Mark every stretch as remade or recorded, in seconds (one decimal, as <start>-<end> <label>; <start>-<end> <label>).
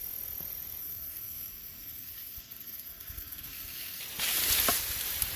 0.0-0.8 recorded; 0.8-4.0 remade; 4.0-5.4 recorded